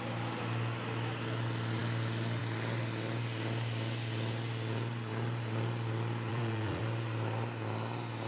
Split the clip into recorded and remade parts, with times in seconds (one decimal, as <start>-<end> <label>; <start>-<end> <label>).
0.0-6.3 recorded; 6.3-6.8 remade; 6.8-8.3 recorded